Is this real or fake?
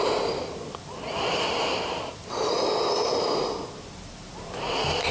fake